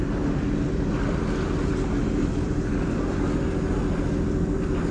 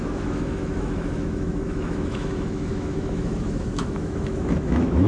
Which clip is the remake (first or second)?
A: second